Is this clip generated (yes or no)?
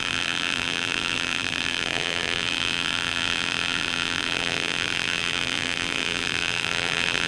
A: yes